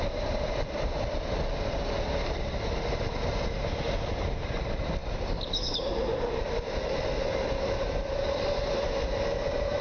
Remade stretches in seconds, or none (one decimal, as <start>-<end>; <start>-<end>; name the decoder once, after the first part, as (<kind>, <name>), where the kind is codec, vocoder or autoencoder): none